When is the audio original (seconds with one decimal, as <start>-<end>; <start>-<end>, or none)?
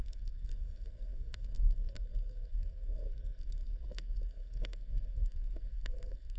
none